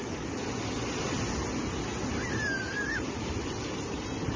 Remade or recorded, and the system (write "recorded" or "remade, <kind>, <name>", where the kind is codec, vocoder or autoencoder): recorded